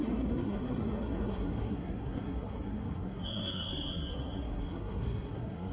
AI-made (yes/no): yes